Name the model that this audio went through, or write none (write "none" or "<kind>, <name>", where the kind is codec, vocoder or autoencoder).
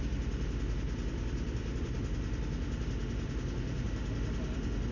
none